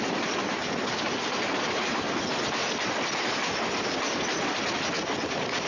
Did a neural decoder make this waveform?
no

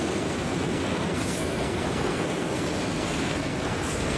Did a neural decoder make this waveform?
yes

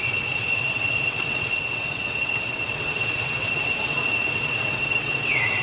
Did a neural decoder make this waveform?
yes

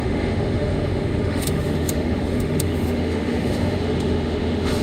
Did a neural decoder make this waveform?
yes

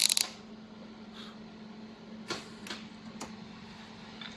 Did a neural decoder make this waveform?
no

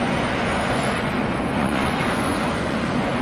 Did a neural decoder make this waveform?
yes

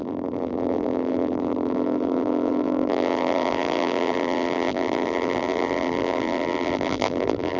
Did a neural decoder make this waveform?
yes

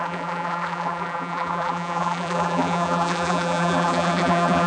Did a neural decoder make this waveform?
yes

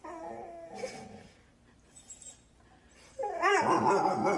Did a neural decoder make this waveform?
no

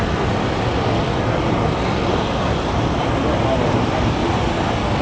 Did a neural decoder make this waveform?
no